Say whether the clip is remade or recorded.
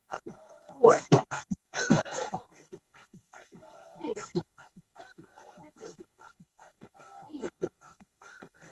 remade